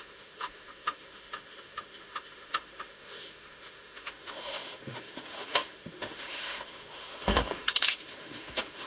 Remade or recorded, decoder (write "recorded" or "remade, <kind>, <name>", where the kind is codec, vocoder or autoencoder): remade, autoencoder, DAC-VAE